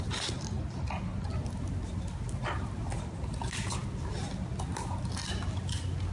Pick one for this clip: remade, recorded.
recorded